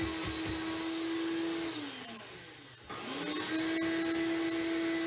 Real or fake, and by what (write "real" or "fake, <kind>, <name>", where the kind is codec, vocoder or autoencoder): real